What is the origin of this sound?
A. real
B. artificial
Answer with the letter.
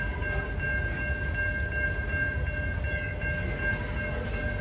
A